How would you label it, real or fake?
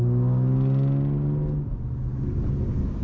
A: real